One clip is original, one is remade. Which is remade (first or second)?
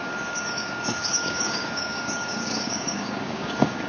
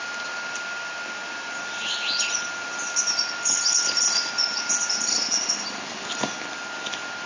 first